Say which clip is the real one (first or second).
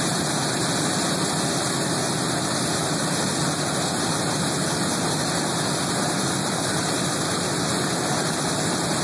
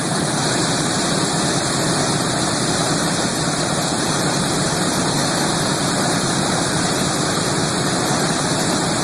first